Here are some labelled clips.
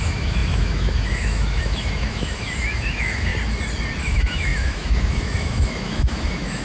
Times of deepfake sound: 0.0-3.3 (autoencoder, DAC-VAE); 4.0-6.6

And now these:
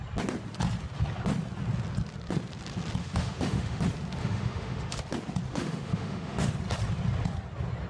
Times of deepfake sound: 3.0-3.8 (autoencoder, DAC-VAE); 4.2-5.0; 5.5-6.5

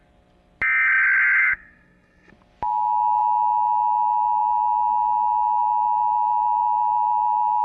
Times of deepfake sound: 1.4-2.3 (codec, SNAC)

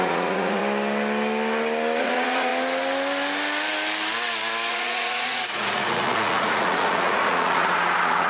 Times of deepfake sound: 0.0-0.6 (vocoder, Vocos); 2.0-2.5; 4.7-8.3

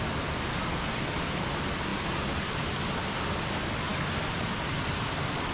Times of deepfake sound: none

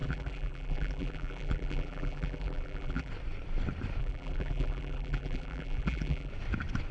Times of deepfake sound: 0.0-3.1 (vocoder, BigVGAN v2); 4.0-6.3

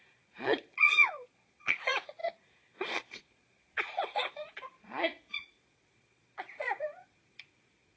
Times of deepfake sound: 0.0-8.0 (vocoder, Vocos)

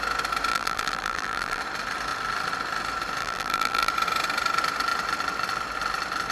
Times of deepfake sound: 0.5-1.6 (vocoder, BigVGAN v2); 3.2-3.9